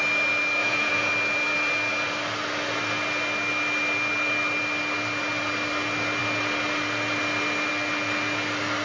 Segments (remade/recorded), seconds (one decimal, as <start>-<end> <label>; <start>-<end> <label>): 0.0-0.6 recorded; 0.6-1.1 remade; 1.1-8.8 recorded